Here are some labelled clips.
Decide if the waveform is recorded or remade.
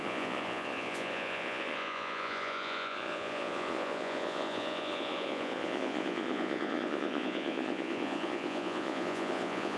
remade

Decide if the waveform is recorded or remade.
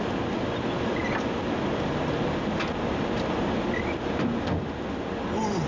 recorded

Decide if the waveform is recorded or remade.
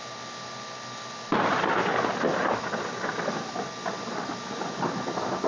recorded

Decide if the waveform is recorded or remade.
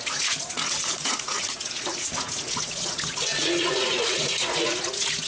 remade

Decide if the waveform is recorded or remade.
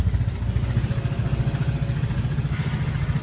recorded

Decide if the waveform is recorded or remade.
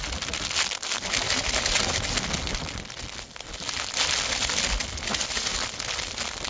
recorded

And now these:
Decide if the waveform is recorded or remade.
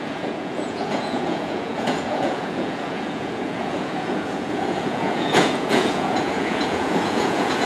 remade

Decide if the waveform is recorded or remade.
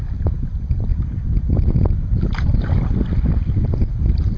recorded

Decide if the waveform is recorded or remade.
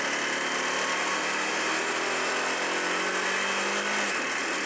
recorded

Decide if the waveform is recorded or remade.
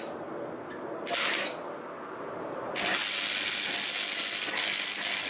recorded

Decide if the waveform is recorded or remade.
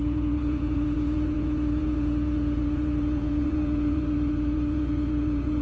remade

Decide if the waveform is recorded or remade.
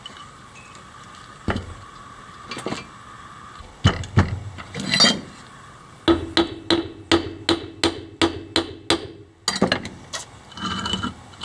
recorded